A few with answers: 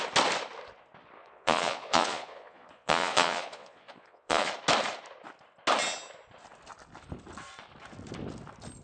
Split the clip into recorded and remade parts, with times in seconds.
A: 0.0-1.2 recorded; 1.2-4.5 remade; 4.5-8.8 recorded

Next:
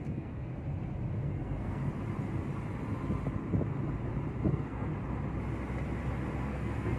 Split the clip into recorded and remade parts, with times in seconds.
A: 0.0-0.5 remade; 0.5-1.1 recorded; 1.1-1.8 remade; 1.8-4.4 recorded; 4.4-4.9 remade; 4.9-6.4 recorded; 6.4-7.0 remade

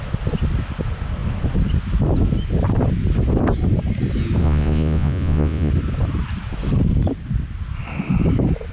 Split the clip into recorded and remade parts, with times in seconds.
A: 0.0-4.4 recorded; 4.4-5.7 remade; 5.7-8.7 recorded

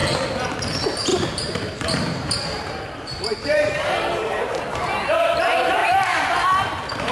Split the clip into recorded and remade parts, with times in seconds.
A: 0.0-1.1 recorded; 1.1-5.0 remade; 5.0-5.8 recorded; 5.8-7.1 remade

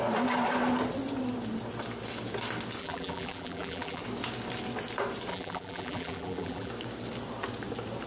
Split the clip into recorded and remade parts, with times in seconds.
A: 0.0-2.8 recorded; 2.8-4.0 remade; 4.0-5.3 recorded; 5.3-6.7 remade; 6.7-8.1 recorded

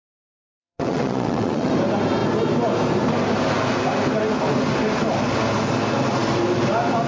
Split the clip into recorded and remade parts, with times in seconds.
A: 0.0-0.6 recorded; 0.6-1.7 remade; 1.7-7.1 recorded

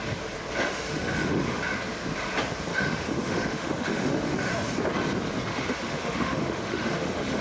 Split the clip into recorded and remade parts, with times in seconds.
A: 0.0-0.7 recorded; 0.7-1.6 remade; 1.6-2.7 recorded; 2.7-4.5 remade; 4.5-5.5 recorded; 5.5-7.4 remade

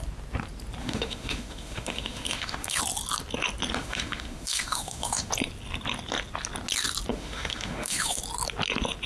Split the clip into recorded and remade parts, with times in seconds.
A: 0.0-0.8 recorded; 0.8-2.8 remade; 2.8-3.8 recorded; 3.8-5.3 remade; 5.3-7.1 recorded; 7.1-8.2 remade; 8.2-9.1 recorded